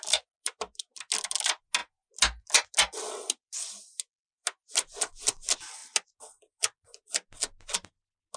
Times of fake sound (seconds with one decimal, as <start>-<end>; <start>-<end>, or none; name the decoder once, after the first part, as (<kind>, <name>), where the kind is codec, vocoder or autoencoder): none